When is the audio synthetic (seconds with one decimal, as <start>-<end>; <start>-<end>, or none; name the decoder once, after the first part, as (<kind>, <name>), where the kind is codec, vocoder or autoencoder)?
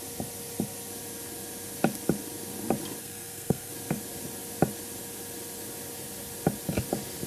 3.0-3.7 (codec, SNAC)